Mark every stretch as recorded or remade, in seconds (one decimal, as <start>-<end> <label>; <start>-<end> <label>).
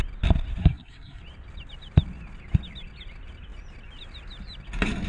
0.0-0.6 recorded; 0.6-1.2 remade; 1.2-5.1 recorded